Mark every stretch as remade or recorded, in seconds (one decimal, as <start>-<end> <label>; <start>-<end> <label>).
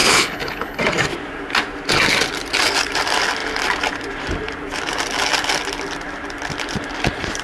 0.0-0.8 remade; 0.8-7.4 recorded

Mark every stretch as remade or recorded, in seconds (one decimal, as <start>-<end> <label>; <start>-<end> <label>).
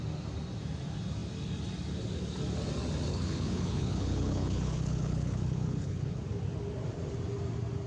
0.0-3.1 recorded; 3.1-6.2 remade; 6.2-7.9 recorded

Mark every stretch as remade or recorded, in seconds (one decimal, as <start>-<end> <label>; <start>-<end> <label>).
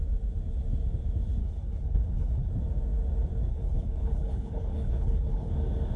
0.0-1.4 recorded; 1.4-2.5 remade; 2.5-3.5 recorded; 3.5-5.5 remade; 5.5-6.0 recorded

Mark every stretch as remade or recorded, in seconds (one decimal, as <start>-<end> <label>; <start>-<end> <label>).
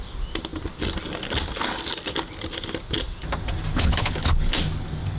0.0-3.7 recorded; 3.7-4.6 remade; 4.6-5.2 recorded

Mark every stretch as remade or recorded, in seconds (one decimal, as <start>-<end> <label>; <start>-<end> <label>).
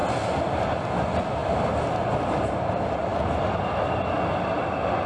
0.0-5.1 recorded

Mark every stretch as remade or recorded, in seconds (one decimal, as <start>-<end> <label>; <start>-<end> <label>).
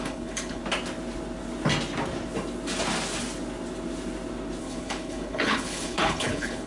0.0-0.6 remade; 0.6-4.6 recorded; 4.6-6.7 remade